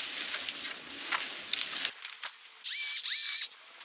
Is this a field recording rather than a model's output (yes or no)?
yes